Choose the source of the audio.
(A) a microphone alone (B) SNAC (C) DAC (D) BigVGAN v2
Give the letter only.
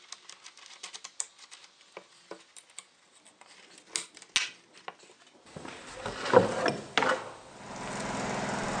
A